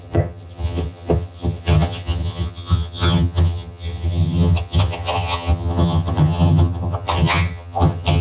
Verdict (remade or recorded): remade